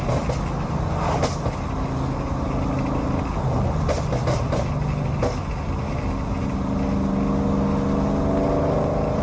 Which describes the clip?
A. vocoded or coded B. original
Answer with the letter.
B